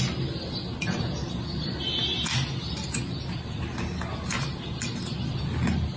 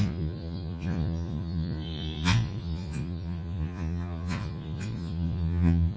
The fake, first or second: second